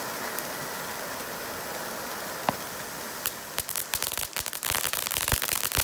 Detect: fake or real real